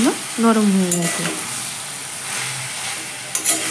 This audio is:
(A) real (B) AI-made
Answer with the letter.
A